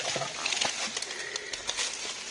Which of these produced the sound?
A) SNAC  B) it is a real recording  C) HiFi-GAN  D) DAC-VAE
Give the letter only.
B